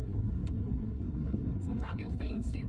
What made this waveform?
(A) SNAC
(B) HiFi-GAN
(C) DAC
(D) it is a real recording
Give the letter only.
A